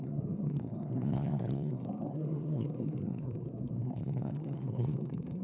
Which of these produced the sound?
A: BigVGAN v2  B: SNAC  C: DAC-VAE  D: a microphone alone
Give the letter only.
B